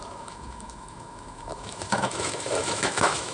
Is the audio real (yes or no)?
no